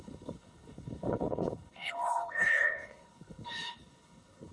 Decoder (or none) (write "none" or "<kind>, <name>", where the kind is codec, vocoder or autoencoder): codec, HILCodec